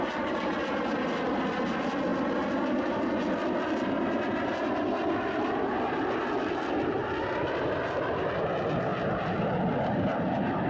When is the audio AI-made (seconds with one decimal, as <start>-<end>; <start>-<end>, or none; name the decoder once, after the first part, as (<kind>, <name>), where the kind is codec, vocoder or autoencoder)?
none